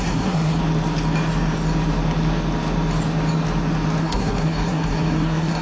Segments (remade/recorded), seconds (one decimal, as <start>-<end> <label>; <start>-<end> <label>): 0.0-0.6 remade; 0.6-4.0 recorded; 4.0-5.6 remade